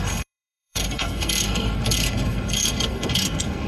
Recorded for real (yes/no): no